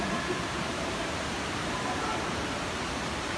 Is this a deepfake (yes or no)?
yes